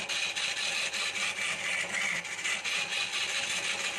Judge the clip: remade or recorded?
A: recorded